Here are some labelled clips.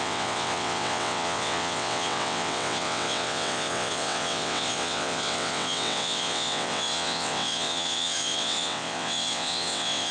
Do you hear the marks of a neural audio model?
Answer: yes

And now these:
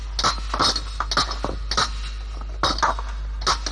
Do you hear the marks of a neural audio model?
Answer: no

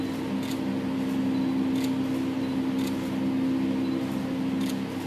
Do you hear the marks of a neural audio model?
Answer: no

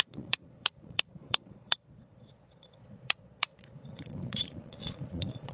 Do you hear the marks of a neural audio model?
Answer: yes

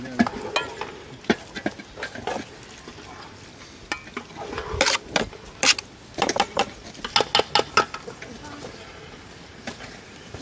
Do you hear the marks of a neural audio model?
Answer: no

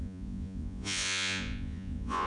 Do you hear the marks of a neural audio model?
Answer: yes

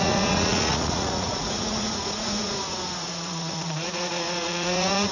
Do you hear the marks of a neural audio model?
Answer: yes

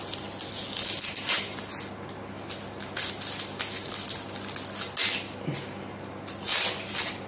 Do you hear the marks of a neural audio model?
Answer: no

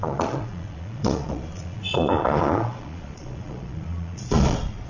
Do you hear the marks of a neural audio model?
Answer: yes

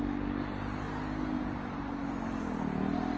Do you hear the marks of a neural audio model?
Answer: no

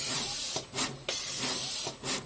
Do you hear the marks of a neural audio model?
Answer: no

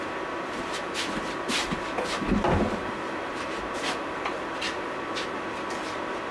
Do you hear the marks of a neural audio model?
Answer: yes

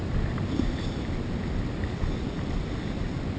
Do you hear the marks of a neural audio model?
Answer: no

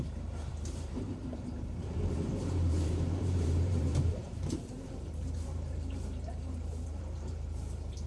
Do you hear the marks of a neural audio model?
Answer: yes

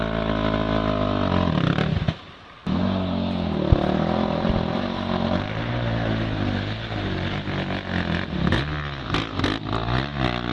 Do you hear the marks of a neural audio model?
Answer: no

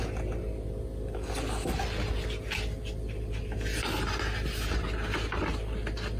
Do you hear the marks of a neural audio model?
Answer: no